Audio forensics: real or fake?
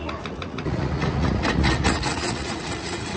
fake